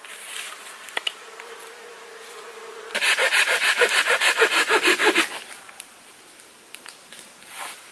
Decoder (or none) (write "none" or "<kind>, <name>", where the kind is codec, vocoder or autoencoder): vocoder, BigVGAN v2